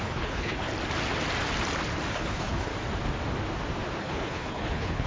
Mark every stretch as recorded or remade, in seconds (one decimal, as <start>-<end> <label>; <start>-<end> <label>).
0.0-0.7 remade; 0.7-2.1 recorded; 2.1-2.7 remade; 2.7-4.0 recorded; 4.0-5.1 remade